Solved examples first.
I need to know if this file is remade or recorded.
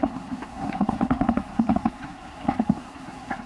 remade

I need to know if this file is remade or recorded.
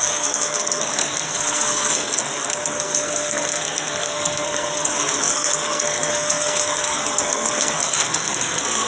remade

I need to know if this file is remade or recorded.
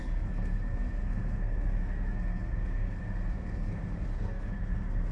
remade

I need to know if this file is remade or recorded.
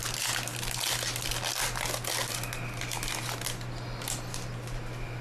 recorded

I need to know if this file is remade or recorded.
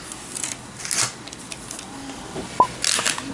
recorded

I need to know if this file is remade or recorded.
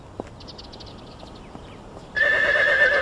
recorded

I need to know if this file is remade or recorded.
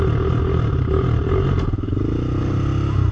recorded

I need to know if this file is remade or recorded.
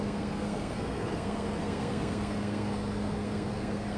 remade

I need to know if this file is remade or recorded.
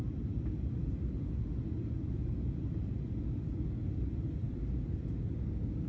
recorded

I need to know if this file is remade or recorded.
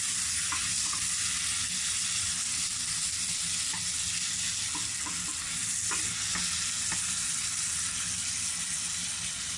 recorded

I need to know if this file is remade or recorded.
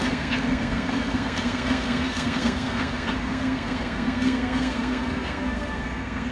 remade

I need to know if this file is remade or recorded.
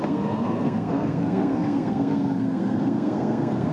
remade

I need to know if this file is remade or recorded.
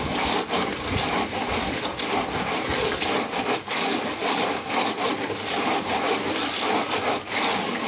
recorded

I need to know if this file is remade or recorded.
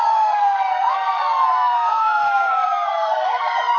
remade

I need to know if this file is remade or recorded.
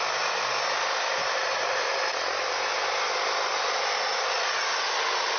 recorded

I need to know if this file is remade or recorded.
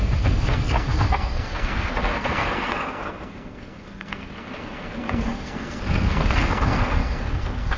remade